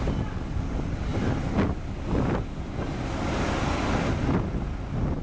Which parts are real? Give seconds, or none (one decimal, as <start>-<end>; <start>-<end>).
0.0-5.2